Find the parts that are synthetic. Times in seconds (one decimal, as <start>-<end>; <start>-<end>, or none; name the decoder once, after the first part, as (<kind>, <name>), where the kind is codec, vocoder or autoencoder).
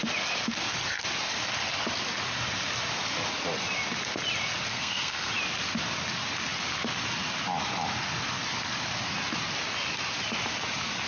4.7-5.3 (codec, SNAC)